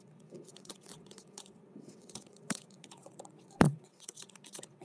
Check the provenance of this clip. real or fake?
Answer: fake